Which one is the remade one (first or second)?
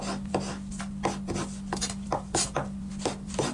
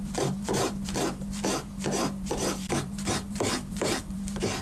second